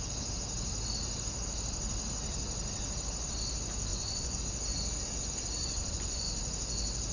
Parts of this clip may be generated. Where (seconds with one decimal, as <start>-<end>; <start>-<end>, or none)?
3.9-4.4; 5.6-6.4